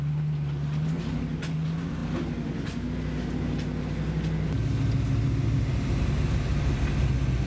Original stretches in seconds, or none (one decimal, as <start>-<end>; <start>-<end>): 0.0-7.5